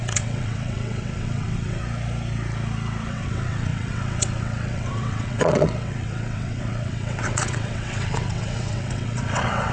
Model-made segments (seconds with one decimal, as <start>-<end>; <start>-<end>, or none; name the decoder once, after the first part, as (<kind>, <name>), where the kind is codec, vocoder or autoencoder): 0.0-1.8 (vocoder, WaveNeXt); 3.1-9.7